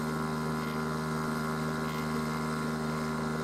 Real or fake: real